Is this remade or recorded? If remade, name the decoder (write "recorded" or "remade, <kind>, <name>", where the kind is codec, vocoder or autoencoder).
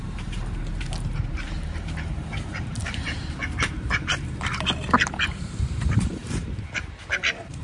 remade, vocoder, BigVGAN v2